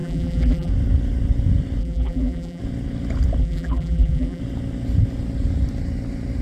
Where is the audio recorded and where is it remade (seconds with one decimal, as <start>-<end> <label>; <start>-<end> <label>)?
0.0-0.7 remade; 0.7-1.8 recorded; 1.8-2.6 remade; 2.6-3.4 recorded; 3.4-4.4 remade; 4.4-6.4 recorded